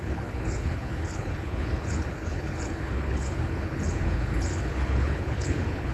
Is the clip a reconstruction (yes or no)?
yes